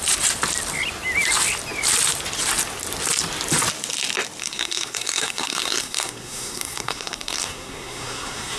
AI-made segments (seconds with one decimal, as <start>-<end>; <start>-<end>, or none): 4.4-8.6